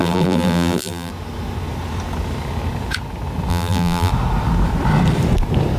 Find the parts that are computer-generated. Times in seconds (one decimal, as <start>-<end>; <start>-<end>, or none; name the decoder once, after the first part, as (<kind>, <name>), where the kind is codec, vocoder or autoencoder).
0.0-1.1 (vocoder, BigVGAN v2); 3.5-4.1